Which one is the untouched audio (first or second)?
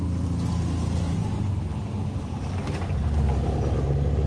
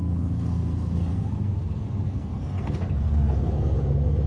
first